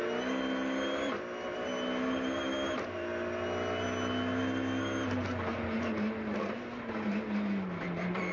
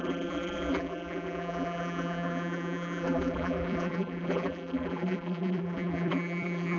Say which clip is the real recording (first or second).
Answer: first